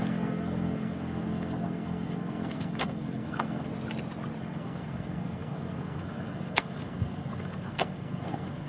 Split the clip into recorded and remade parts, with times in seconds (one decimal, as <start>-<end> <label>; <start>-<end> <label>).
0.0-3.7 remade; 3.7-4.4 recorded; 4.4-8.7 remade